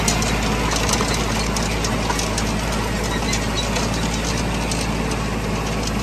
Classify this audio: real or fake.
real